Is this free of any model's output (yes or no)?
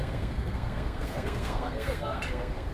no